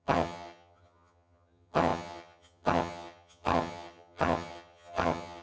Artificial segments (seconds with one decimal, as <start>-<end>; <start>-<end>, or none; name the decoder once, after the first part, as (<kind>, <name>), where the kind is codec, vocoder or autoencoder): 0.0-5.4 (vocoder, HiFi-GAN)